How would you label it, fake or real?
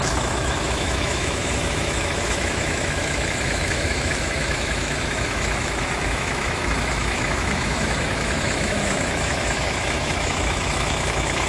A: fake